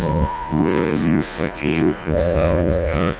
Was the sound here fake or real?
fake